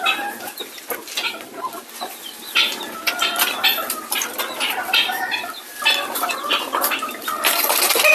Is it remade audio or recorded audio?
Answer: recorded